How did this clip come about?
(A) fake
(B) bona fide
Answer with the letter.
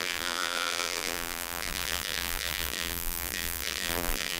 A